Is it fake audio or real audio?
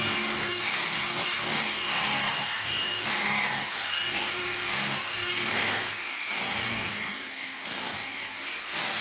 fake